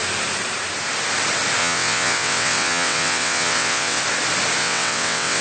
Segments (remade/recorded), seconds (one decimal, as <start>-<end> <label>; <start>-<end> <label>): 0.0-1.6 recorded; 1.6-4.0 remade; 4.0-4.6 recorded; 4.6-5.4 remade